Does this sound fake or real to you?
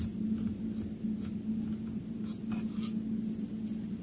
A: real